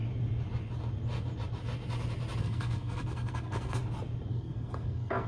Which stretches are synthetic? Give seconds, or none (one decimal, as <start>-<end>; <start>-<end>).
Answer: 2.4-3.8; 4.3-5.3